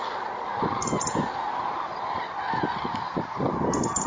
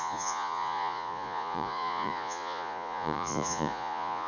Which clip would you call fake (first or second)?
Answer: second